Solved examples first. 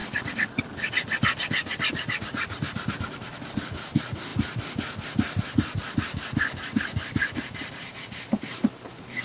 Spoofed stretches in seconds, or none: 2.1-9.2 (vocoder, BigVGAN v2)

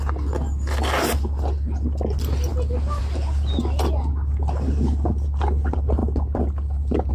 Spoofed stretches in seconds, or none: none